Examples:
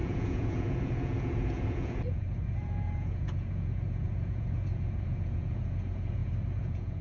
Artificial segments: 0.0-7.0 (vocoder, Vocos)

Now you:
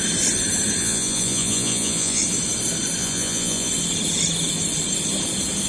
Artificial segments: 0.8-2.2 (vocoder, Vocos); 3.0-3.7

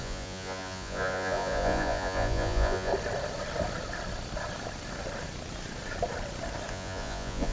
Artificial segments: 0.0-2.9 (vocoder, Vocos); 6.7-7.5

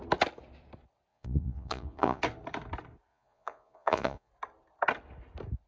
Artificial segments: 1.1-2.2 (vocoder, Vocos); 3.1-4.3

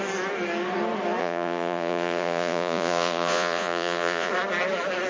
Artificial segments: 1.2-4.3 (vocoder, Vocos)

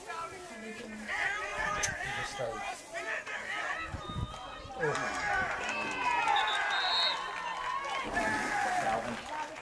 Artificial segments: 1.5-2.8 (vocoder, Vocos)

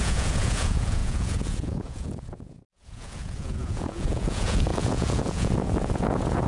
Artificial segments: 0.0-6.5 (vocoder, Vocos)

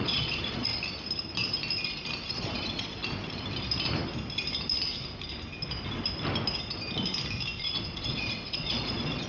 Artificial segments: 0.0-0.7 (vocoder, Vocos); 2.3-3.0; 7.6-9.3